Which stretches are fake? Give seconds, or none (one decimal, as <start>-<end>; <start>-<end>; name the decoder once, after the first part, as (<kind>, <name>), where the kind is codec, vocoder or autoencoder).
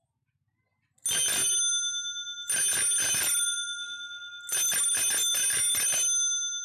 none